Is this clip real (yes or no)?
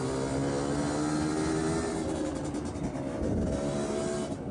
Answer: yes